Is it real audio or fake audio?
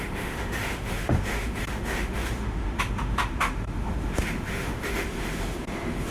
fake